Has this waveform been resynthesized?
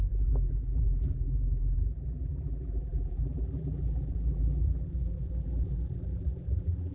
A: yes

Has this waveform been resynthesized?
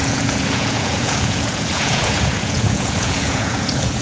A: yes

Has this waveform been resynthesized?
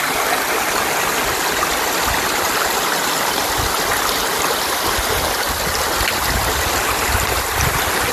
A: no